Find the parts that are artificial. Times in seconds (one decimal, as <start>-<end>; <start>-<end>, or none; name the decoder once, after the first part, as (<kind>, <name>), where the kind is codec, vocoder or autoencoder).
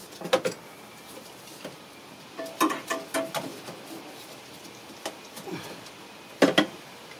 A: 1.5-2.2 (vocoder, BigVGAN v2)